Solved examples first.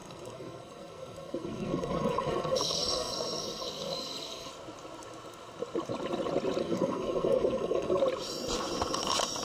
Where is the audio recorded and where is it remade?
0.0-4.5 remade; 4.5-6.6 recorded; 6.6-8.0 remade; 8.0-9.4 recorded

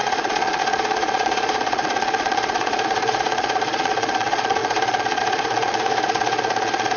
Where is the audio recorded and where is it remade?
0.0-7.0 remade

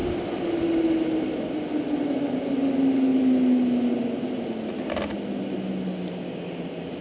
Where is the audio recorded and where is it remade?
0.0-7.0 recorded